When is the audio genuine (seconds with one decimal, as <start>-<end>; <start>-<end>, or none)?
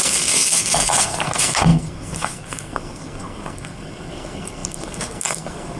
none